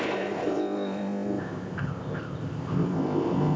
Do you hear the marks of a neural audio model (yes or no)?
yes